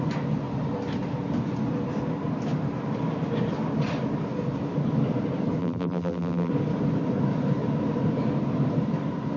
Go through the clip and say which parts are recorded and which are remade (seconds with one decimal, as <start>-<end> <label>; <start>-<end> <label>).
0.0-5.6 recorded; 5.6-6.5 remade; 6.5-9.4 recorded

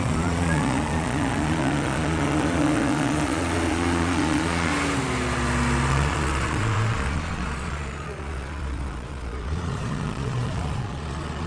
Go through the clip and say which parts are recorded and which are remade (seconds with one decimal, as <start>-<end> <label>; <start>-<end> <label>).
0.0-4.7 remade; 4.7-5.9 recorded; 5.9-11.5 remade

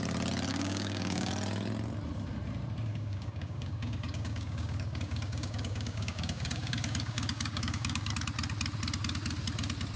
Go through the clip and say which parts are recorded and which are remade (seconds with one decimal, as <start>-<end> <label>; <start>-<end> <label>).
0.0-0.5 recorded; 0.5-1.3 remade; 1.3-2.9 recorded; 2.9-8.1 remade; 8.1-10.0 recorded

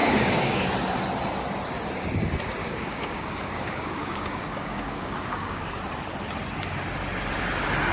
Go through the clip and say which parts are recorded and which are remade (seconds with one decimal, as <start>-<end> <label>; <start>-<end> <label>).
0.0-0.7 remade; 0.7-2.6 recorded; 2.6-5.7 remade; 5.7-7.9 recorded

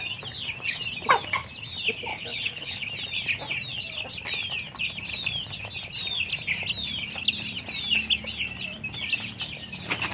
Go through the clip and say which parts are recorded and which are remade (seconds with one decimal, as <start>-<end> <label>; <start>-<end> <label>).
0.0-2.1 recorded; 2.1-2.9 remade; 2.9-10.1 recorded

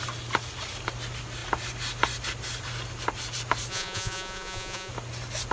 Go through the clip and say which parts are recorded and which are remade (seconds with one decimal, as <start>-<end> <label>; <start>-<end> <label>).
0.0-3.7 recorded; 3.7-4.9 remade; 4.9-5.5 recorded

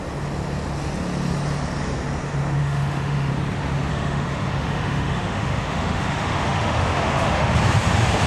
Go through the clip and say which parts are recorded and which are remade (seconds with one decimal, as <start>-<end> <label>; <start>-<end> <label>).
0.0-2.6 recorded; 2.6-3.3 remade; 3.3-3.9 recorded; 3.9-7.5 remade; 7.5-8.3 recorded

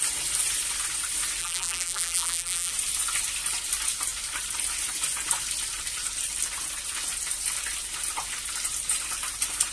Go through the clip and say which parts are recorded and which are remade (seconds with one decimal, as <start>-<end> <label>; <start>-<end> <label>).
0.0-1.4 recorded; 1.4-2.7 remade; 2.7-9.7 recorded